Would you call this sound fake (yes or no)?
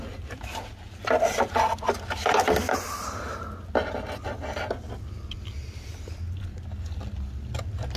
no